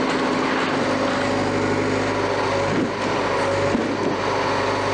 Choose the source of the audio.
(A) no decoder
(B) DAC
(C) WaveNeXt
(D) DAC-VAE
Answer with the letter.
A